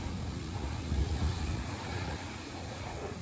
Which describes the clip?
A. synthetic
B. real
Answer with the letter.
A